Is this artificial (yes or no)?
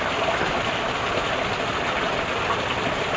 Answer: no